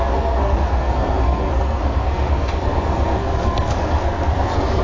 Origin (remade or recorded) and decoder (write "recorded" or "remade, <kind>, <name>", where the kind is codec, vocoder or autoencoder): remade, codec, SNAC